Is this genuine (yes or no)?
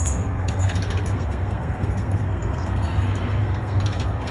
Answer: no